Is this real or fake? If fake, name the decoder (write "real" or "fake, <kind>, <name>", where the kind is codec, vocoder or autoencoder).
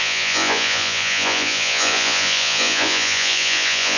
fake, vocoder, Vocos